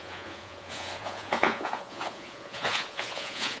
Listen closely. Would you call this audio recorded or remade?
remade